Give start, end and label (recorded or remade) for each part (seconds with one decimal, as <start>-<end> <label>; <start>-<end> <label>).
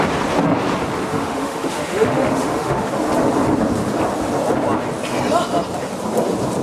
0.0-1.1 recorded; 1.1-2.9 remade; 2.9-6.6 recorded